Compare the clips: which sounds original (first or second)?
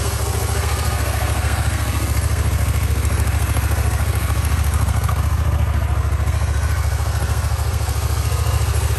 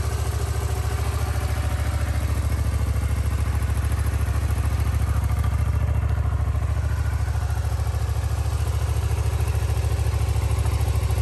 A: second